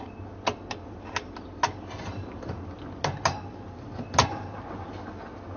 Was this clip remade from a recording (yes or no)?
no